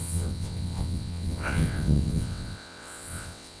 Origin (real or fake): fake